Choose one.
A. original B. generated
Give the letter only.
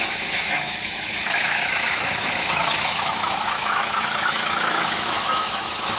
B